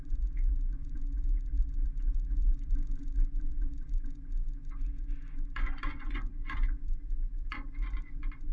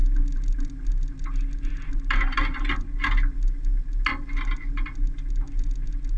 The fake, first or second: first